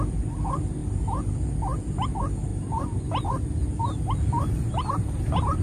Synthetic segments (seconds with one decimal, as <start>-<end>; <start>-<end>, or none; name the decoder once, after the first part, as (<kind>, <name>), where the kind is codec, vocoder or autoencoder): none